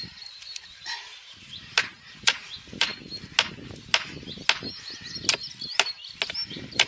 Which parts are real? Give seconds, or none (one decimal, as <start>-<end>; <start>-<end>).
2.9-6.5